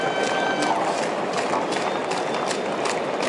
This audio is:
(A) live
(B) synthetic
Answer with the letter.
A